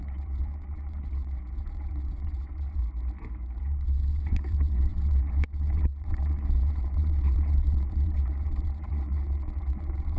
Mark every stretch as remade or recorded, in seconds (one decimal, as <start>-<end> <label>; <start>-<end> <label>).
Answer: 0.0-2.8 remade; 2.8-3.6 recorded; 3.6-10.2 remade